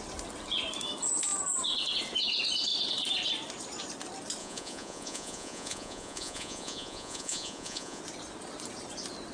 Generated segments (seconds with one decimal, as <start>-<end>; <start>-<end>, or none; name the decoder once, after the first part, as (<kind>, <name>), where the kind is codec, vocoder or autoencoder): 4.4-8.0 (vocoder, Vocos)